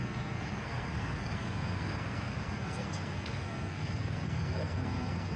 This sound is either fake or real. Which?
fake